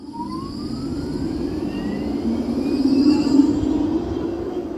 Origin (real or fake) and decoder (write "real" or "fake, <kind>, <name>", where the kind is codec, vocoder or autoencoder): real